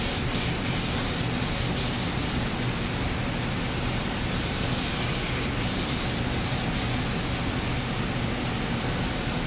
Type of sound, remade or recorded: recorded